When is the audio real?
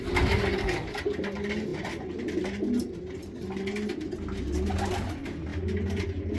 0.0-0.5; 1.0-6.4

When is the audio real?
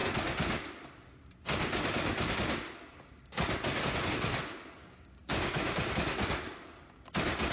0.0-4.8; 5.9-7.5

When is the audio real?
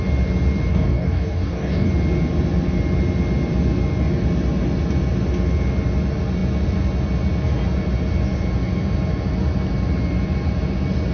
0.0-0.7; 1.9-11.1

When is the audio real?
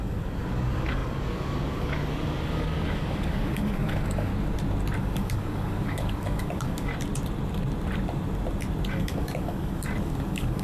4.3-5.0; 6.9-8.9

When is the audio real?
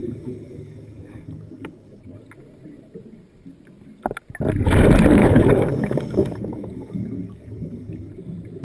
2.0-5.2; 8.1-8.6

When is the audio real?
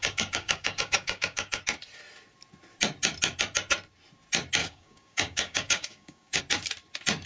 1.6-4.6; 6.4-7.3